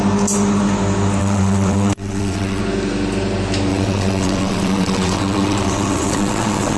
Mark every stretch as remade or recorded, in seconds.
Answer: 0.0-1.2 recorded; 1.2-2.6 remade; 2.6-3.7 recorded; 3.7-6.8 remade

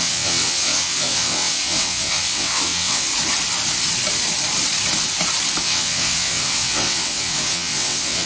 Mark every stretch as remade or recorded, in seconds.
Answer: 0.0-3.1 remade; 3.1-5.6 recorded; 5.6-8.3 remade

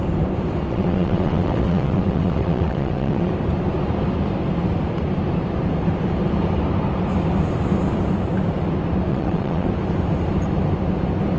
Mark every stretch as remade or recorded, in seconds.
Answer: 0.0-0.7 recorded; 0.7-3.3 remade; 3.3-9.1 recorded; 9.1-9.7 remade; 9.7-11.4 recorded

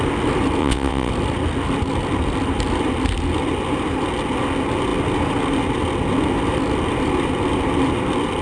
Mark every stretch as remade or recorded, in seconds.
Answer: 0.0-0.6 recorded; 0.6-1.1 remade; 1.1-8.4 recorded